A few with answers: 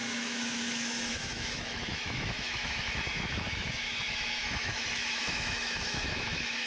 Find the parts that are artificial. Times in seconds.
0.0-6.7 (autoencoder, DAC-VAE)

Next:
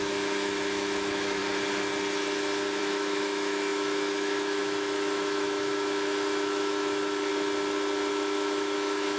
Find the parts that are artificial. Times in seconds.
0.0-1.4 (autoencoder, DAC-VAE); 2.8-7.3; 8.1-9.2

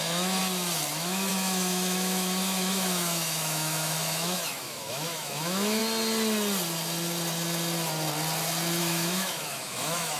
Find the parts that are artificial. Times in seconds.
0.0-0.4 (autoencoder, DAC-VAE); 0.9-5.8; 8.8-10.2

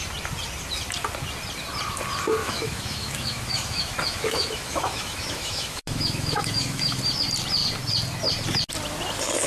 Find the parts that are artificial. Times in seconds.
2.4-7.0 (autoencoder, DAC-VAE)

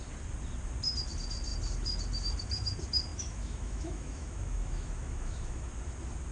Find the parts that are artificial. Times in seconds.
3.1-5.7 (autoencoder, DAC-VAE)